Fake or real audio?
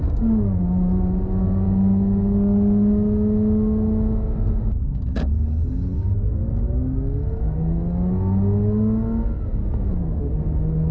real